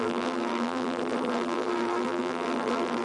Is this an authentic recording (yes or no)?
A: no